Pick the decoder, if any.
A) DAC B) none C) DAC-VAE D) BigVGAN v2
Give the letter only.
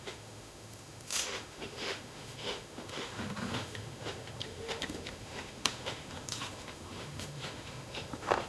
C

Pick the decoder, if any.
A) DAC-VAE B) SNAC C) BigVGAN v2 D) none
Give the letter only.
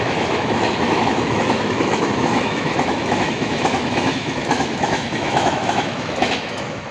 A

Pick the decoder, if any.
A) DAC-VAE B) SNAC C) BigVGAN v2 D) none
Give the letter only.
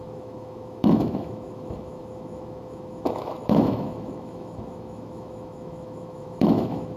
A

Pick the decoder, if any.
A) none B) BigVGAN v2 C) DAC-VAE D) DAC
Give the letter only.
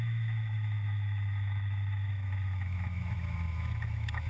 C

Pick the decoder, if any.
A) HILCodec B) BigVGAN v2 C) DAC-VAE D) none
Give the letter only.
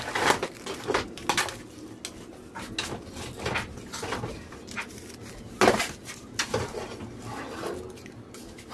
D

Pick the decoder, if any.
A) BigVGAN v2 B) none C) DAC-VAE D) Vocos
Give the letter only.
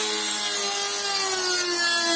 B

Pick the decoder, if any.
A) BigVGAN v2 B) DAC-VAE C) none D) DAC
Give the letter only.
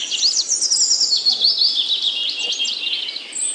C